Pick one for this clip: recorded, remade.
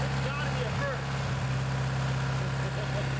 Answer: recorded